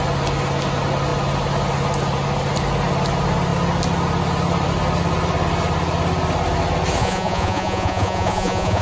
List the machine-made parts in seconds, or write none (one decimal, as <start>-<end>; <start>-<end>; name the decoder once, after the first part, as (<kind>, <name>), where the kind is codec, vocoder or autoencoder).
7.0-8.8 (vocoder, Vocos)